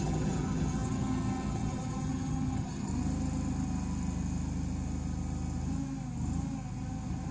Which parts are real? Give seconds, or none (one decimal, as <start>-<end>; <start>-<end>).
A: 2.9-7.3